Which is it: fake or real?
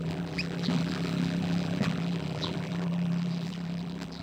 fake